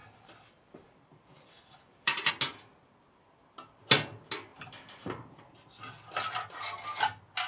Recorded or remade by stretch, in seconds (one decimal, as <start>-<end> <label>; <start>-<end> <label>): 0.0-2.3 remade; 2.3-4.5 recorded; 4.5-5.2 remade; 5.2-7.5 recorded